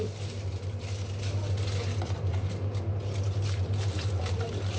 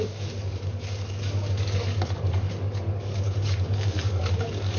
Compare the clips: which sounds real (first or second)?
first